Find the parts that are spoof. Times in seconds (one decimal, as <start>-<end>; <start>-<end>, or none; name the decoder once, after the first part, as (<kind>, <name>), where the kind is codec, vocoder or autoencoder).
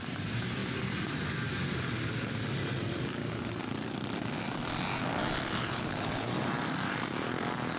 5.6-6.3 (codec, HILCodec)